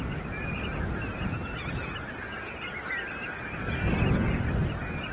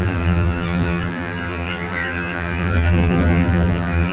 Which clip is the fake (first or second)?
second